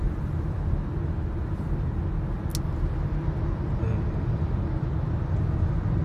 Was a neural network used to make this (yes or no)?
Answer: no